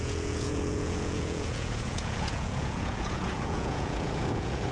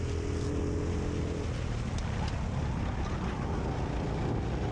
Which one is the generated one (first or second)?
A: first